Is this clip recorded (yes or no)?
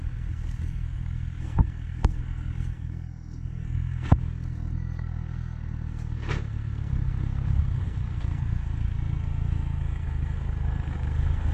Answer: no